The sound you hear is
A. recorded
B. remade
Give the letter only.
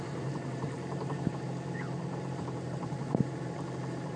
B